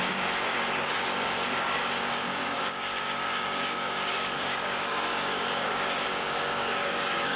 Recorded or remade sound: remade